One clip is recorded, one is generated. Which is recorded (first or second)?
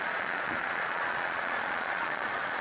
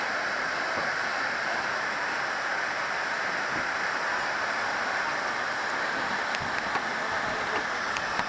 second